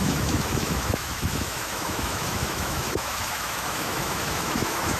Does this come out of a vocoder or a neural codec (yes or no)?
yes